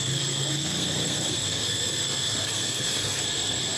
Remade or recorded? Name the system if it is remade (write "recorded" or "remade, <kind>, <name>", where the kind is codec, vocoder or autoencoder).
remade, codec, SNAC